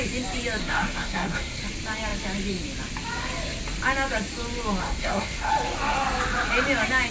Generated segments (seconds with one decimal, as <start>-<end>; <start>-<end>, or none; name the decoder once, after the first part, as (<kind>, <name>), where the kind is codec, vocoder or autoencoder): 0.6-1.6 (codec, SNAC); 4.8-5.5